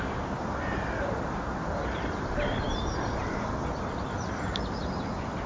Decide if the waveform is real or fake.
real